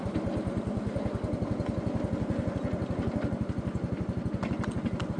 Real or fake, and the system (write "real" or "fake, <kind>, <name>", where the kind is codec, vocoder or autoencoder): real